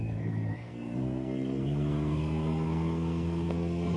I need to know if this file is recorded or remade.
remade